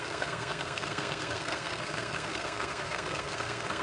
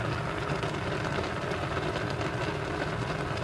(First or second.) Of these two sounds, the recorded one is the second